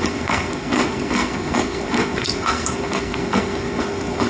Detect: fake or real fake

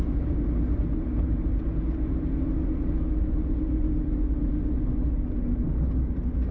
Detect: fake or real real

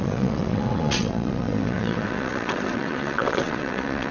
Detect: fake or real fake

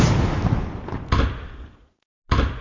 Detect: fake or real real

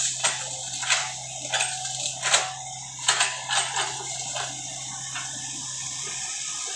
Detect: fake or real real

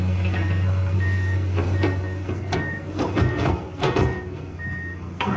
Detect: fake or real fake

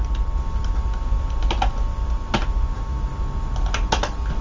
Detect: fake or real real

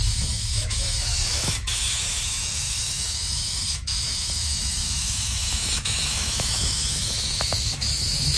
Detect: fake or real fake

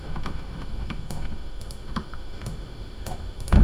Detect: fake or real fake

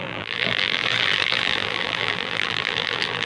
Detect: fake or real fake